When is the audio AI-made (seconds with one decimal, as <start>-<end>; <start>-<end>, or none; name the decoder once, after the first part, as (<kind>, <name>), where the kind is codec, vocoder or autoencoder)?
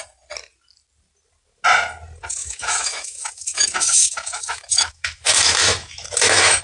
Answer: 2.4-6.6 (autoencoder, DAC-VAE)